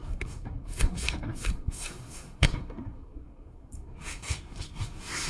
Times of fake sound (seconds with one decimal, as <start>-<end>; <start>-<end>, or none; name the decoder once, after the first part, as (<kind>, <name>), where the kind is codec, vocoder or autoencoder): 0.0-5.3 (codec, SNAC)